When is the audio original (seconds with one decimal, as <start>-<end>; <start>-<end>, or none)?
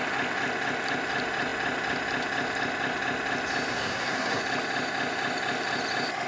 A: 0.0-3.7; 4.4-6.3